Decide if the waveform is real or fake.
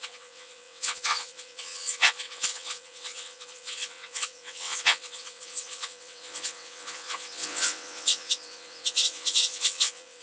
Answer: fake